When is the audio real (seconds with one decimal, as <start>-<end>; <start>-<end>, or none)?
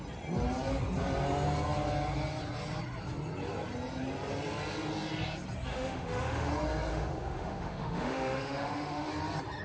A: 0.0-5.7; 6.5-6.9; 9.1-9.6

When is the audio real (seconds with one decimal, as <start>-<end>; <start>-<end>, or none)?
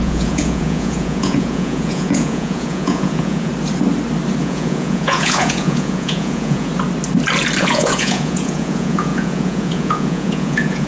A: 3.5-4.4; 6.7-7.6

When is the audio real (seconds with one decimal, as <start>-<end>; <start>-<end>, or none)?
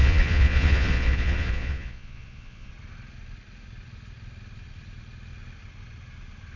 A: 2.7-6.6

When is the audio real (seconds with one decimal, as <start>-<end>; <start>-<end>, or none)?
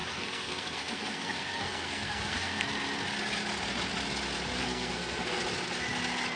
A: 2.6-4.6; 5.4-6.4